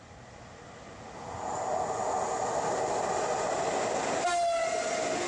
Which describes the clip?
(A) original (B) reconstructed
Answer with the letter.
A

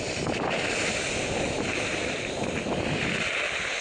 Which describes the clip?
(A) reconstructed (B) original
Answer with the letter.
B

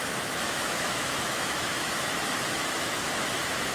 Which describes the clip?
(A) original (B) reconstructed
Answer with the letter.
B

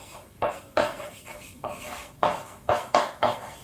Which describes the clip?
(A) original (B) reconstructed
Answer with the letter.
B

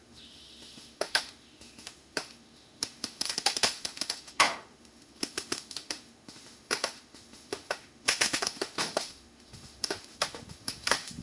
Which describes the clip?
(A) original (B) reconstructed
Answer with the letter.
B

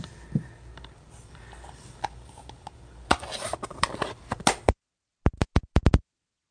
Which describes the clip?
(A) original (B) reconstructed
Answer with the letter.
A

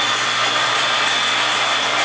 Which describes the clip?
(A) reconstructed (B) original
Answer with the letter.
B